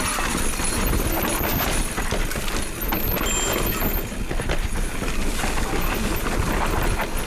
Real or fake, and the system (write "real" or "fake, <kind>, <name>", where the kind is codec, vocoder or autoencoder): real